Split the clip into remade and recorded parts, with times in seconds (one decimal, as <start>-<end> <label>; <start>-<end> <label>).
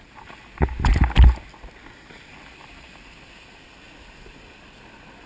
0.0-5.3 recorded